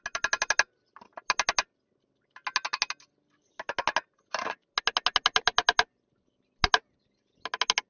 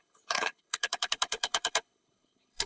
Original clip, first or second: first